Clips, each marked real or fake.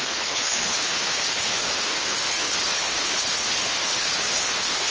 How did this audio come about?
fake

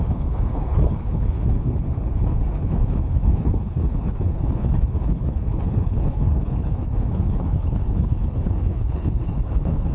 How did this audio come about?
fake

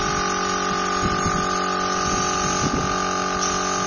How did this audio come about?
real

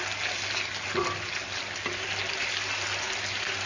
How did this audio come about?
real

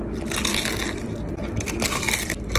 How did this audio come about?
real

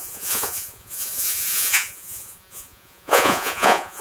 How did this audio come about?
fake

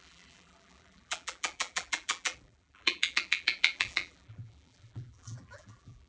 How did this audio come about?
fake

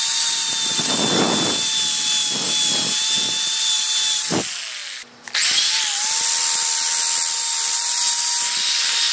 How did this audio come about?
real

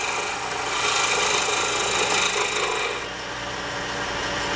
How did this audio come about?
real